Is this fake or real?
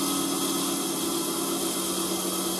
real